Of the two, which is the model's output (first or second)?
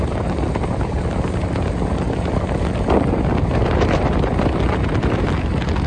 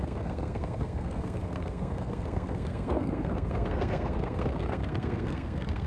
second